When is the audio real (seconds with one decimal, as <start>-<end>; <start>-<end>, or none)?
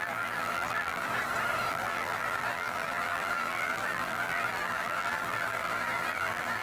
1.1-1.7